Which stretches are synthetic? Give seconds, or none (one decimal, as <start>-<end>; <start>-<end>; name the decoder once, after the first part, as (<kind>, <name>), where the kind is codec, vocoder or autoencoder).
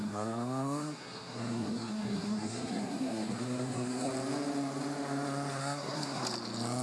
0.0-4.1 (codec, SNAC); 5.6-6.2